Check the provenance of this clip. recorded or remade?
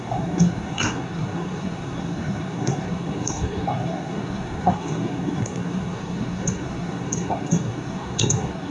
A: remade